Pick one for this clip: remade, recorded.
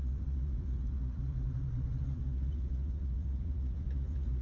remade